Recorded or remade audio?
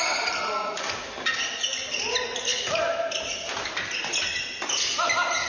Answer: recorded